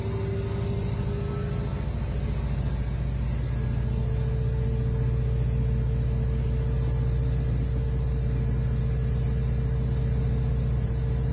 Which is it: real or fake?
real